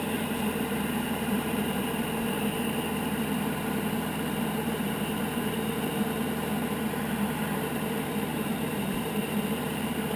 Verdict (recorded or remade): remade